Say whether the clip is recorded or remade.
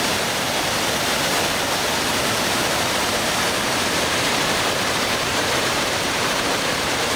remade